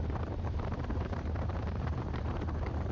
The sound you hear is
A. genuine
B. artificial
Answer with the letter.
B